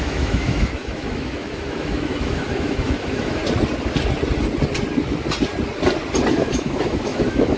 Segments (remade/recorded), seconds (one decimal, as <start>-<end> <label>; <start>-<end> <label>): 0.0-3.4 remade; 3.4-6.3 recorded; 6.3-7.6 remade